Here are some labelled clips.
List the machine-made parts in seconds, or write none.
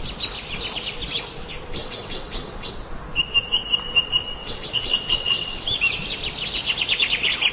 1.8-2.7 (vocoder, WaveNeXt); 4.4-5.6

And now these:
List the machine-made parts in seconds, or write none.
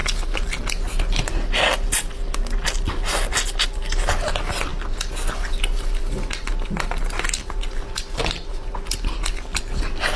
none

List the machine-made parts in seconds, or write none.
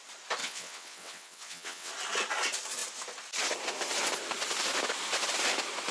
0.4-1.9 (vocoder, WaveNeXt)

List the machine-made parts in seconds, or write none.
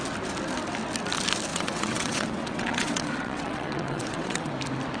1.5-4.5 (vocoder, WaveNeXt)